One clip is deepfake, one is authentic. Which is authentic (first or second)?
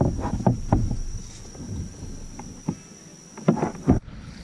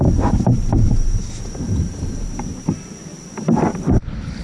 first